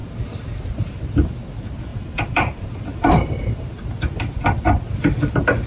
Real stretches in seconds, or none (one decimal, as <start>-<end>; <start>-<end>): 0.0-1.9; 3.7-5.7